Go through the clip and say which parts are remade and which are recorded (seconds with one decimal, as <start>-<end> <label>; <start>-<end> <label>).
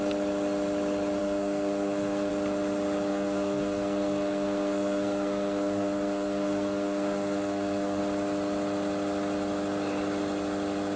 0.0-1.2 recorded; 1.2-2.3 remade; 2.3-3.1 recorded; 3.1-8.0 remade; 8.0-11.0 recorded